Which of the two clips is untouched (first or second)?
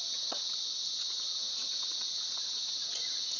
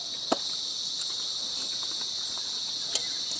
second